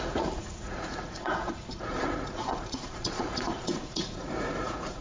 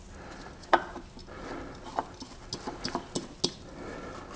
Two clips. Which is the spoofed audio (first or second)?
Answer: first